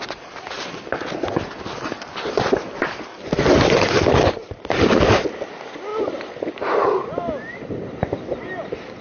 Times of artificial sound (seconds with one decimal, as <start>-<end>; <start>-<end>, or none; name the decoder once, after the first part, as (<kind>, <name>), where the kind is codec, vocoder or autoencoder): none